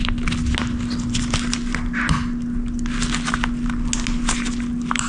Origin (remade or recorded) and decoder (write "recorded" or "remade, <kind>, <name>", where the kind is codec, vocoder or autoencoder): recorded